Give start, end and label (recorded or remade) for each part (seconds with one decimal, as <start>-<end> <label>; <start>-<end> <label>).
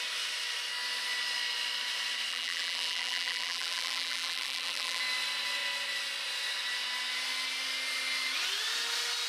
0.0-2.3 recorded; 2.3-5.0 remade; 5.0-9.3 recorded